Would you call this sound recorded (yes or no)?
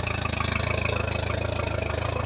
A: yes